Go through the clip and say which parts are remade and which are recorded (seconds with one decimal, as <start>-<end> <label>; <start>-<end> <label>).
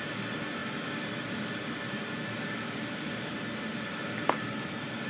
0.0-5.1 recorded